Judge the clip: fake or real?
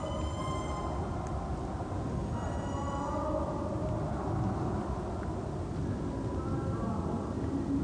real